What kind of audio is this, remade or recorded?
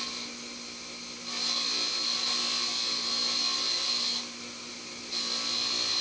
recorded